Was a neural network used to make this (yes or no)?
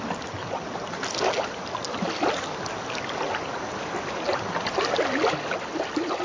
no